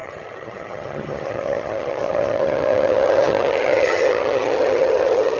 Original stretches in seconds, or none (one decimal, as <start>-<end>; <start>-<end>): none